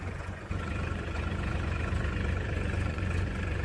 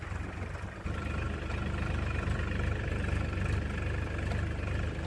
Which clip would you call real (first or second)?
second